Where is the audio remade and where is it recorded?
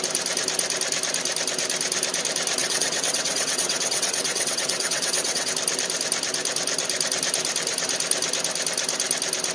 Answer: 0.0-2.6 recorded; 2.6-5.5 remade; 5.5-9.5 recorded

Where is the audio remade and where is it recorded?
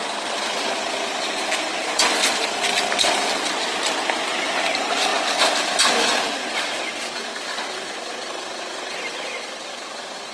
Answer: 0.0-10.3 recorded